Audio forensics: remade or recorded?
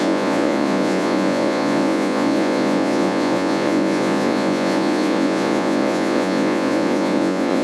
remade